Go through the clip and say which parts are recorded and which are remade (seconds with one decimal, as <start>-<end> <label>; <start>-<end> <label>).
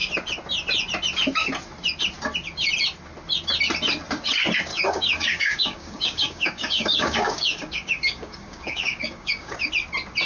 0.0-4.7 recorded; 4.7-9.7 remade; 9.7-10.3 recorded